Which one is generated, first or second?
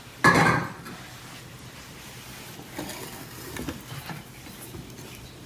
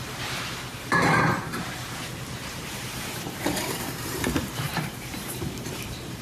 second